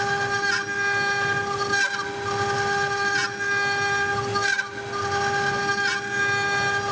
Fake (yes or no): no